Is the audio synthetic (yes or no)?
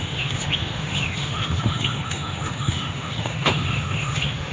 yes